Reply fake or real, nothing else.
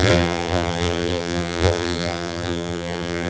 fake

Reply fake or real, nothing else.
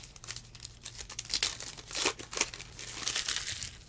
real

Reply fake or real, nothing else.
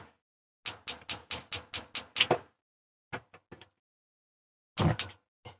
real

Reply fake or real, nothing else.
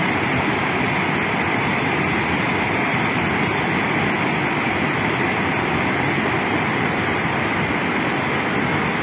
fake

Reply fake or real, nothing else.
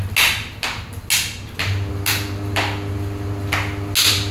real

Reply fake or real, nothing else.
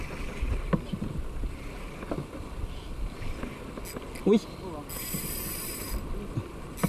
real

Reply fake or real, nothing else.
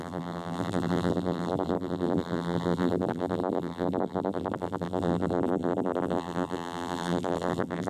fake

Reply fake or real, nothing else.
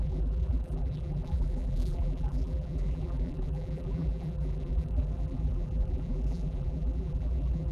fake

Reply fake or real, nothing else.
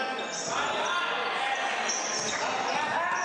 real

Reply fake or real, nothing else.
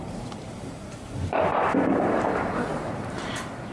fake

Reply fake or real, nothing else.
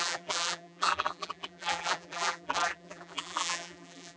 fake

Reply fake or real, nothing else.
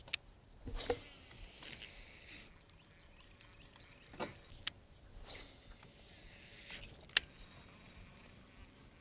real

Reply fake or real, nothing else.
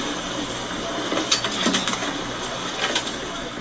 real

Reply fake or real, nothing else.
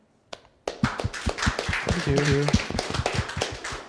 real